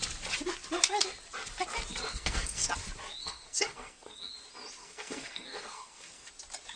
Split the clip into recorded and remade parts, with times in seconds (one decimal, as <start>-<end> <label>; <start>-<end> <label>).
0.0-2.1 recorded; 2.1-2.7 remade; 2.7-3.2 recorded; 3.2-4.3 remade; 4.3-4.8 recorded; 4.8-6.3 remade; 6.3-6.8 recorded